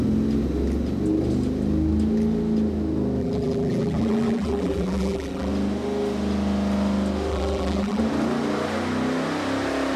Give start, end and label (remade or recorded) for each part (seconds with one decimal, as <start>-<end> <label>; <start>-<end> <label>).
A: 0.0-3.2 recorded; 3.2-5.5 remade; 5.5-7.3 recorded; 7.3-8.0 remade; 8.0-10.0 recorded